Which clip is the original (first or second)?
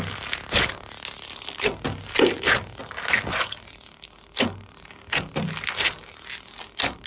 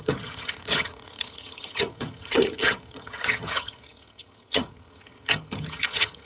first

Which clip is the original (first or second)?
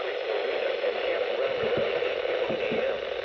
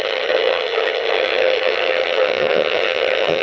first